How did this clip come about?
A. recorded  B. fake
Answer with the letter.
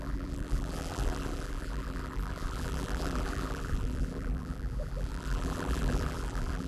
B